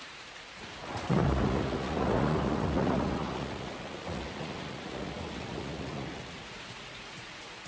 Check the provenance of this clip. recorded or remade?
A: remade